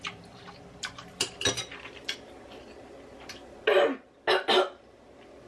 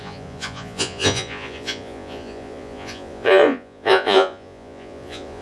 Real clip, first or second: first